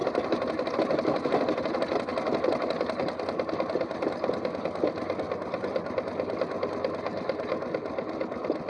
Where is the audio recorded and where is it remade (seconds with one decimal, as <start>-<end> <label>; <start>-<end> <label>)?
0.0-0.7 remade; 0.7-8.7 recorded